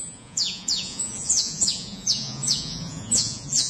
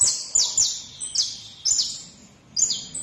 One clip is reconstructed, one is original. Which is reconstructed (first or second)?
first